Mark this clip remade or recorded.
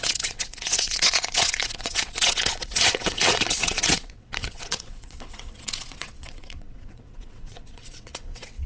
remade